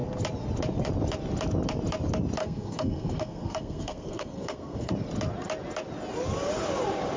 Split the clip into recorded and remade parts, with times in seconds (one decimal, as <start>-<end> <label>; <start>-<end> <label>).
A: 0.0-2.4 recorded; 2.4-4.9 remade; 4.9-7.2 recorded